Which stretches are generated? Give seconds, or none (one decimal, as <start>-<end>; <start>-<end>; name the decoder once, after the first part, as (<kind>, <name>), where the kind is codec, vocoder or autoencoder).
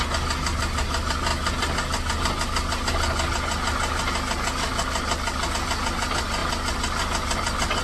none